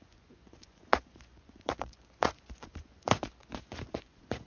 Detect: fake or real fake